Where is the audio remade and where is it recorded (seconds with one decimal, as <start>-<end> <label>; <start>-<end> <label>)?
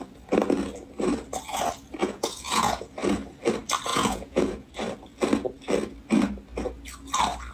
0.0-2.0 recorded; 2.0-2.8 remade; 2.8-3.9 recorded; 3.9-4.7 remade; 4.7-7.5 recorded